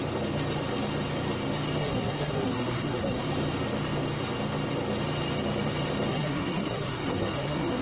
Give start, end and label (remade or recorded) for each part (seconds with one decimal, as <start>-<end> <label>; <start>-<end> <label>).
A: 0.0-1.8 recorded; 1.8-3.3 remade; 3.3-6.1 recorded; 6.1-7.8 remade